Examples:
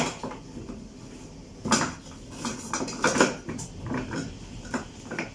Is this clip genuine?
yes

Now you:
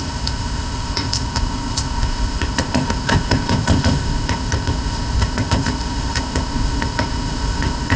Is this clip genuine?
no